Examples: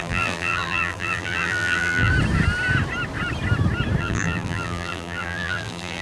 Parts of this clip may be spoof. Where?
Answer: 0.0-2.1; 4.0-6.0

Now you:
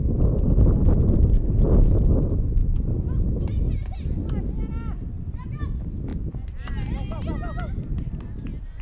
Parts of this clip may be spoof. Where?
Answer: none

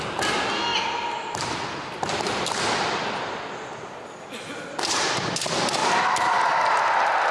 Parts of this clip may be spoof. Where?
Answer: 0.7-4.8

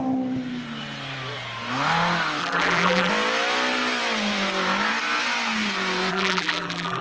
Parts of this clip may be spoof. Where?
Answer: 2.4-3.1; 6.1-7.0